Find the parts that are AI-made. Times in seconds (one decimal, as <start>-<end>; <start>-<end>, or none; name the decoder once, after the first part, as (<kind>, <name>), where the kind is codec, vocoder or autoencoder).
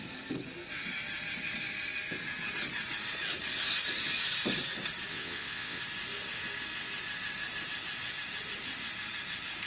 5.1-5.8 (vocoder, WaveNeXt)